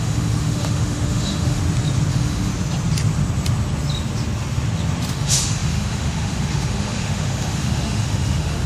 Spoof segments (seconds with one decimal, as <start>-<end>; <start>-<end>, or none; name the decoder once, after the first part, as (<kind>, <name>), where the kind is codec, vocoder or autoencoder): 0.0-1.6 (autoencoder, DAC-VAE); 2.1-2.5; 5.1-8.7